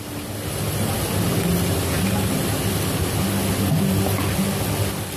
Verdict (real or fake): real